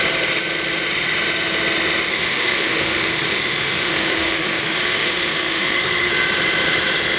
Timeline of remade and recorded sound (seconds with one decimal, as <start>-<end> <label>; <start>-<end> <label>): 0.0-2.1 recorded; 2.1-6.1 remade; 6.1-7.2 recorded